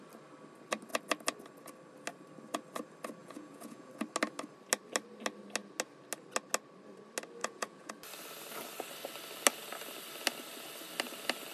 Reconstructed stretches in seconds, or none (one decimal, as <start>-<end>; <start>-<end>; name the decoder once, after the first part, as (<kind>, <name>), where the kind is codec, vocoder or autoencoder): 3.2-3.9 (vocoder, Vocos); 7.4-7.9